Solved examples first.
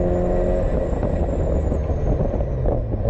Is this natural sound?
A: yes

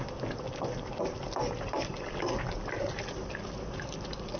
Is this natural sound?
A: yes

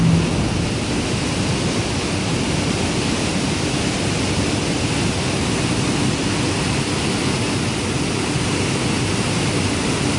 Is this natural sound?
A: yes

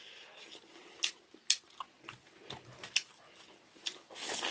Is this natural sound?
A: yes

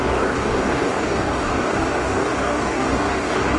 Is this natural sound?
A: no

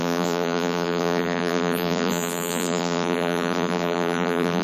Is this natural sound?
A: no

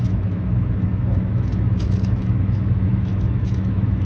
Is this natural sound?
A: no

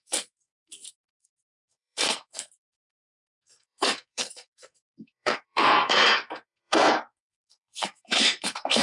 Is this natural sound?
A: no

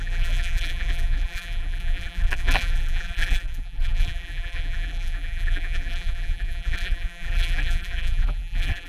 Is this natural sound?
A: no